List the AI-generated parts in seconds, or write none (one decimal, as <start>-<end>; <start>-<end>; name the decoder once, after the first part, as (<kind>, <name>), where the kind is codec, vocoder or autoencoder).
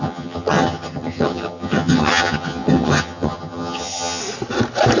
0.0-4.2 (vocoder, HiFi-GAN)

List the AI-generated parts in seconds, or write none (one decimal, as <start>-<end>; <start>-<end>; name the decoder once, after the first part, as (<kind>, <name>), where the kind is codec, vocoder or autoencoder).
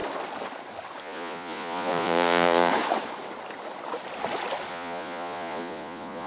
1.0-2.7 (vocoder, Vocos); 4.7-6.3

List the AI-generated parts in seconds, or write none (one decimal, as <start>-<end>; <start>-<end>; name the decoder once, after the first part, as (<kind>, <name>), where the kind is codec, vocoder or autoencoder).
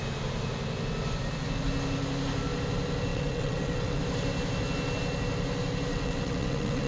3.1-4.0 (vocoder, WaveNeXt); 5.9-6.9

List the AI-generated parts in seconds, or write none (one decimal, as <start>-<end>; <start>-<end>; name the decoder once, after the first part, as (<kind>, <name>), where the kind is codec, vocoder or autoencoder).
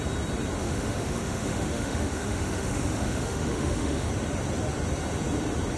0.6-4.1 (autoencoder, DAC-VAE)